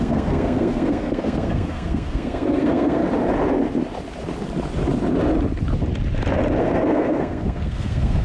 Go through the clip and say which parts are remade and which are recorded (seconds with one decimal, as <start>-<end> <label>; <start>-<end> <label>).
0.0-3.0 remade; 3.0-6.6 recorded; 6.6-8.2 remade